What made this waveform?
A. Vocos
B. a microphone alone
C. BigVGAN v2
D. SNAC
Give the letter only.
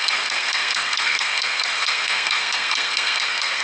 D